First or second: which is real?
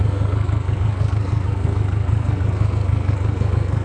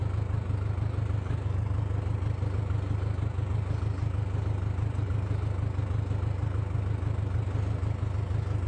second